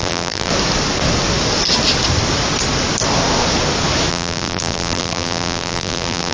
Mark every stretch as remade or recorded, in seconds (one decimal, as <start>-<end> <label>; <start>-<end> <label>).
0.0-0.5 remade; 0.5-4.1 recorded; 4.1-6.3 remade